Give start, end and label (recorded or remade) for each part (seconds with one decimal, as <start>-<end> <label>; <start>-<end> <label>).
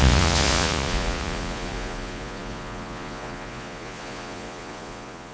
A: 0.0-5.3 remade